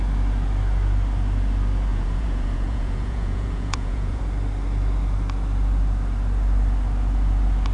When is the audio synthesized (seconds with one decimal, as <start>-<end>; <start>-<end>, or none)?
1.9-4.2